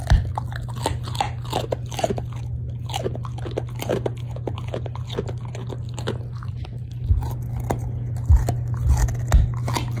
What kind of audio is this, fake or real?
real